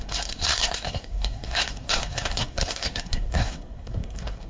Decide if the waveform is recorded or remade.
remade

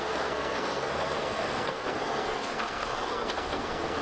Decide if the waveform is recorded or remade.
remade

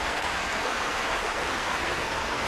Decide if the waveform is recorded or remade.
remade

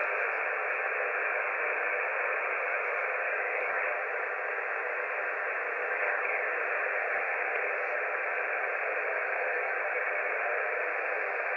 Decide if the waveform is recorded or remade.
recorded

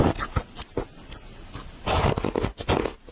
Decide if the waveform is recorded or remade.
recorded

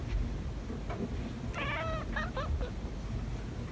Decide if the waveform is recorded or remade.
recorded